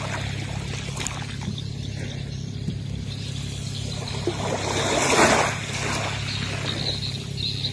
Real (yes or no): yes